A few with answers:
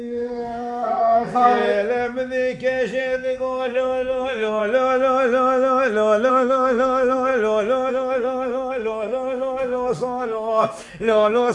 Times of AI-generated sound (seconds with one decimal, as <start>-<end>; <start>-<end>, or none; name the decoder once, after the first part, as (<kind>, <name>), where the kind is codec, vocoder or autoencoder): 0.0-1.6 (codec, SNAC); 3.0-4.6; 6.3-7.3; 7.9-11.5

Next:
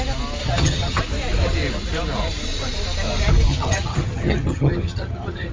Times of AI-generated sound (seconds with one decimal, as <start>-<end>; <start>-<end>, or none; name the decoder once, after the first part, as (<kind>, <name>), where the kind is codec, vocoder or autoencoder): 0.4-1.0 (vocoder, HiFi-GAN); 3.5-5.5

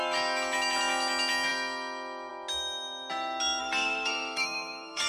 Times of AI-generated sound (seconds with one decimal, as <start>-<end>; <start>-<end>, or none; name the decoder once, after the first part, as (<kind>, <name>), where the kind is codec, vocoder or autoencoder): 3.6-5.1 (codec, SNAC)

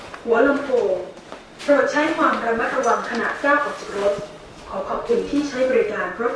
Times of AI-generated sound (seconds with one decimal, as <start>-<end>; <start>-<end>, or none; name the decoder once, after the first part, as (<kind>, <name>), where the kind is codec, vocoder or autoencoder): none